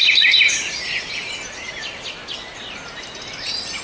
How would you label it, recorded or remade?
recorded